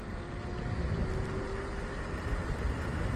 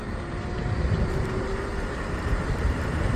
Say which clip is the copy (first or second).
second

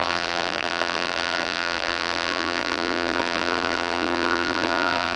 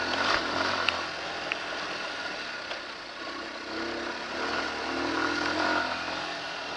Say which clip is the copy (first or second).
first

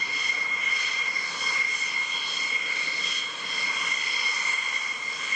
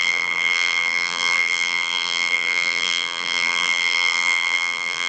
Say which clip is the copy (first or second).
second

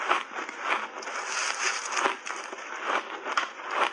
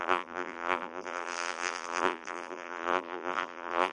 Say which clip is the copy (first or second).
second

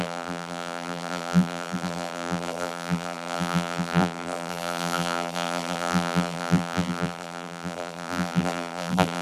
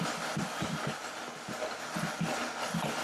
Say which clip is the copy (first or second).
first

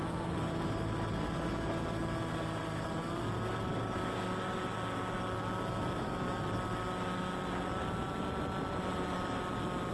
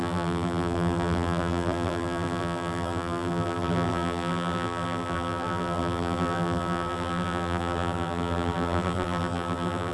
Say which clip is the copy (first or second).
second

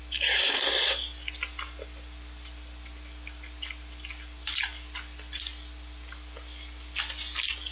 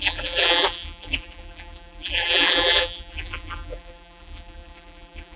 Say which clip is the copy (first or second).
second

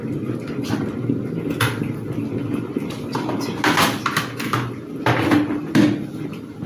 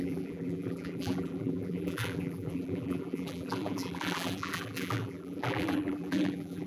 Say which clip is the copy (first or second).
second